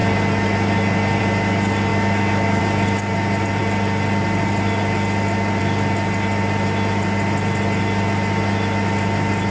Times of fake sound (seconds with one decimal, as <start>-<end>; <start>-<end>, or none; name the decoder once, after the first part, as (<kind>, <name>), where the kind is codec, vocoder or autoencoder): 1.9-2.6 (autoencoder, DAC-VAE)